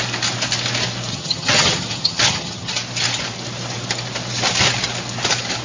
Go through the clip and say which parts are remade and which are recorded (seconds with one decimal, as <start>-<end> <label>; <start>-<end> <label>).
0.0-1.1 recorded; 1.1-2.7 remade; 2.7-5.6 recorded